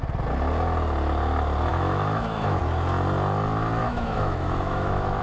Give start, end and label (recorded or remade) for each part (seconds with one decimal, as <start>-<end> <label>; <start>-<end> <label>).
0.0-1.7 recorded; 1.7-2.6 remade; 2.6-3.8 recorded; 3.8-5.2 remade